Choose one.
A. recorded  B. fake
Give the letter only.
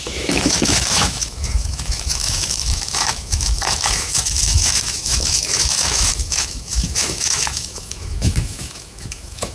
B